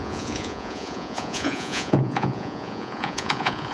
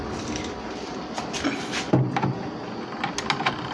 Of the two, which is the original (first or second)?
second